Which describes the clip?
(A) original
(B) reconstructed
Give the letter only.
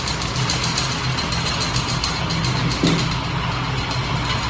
A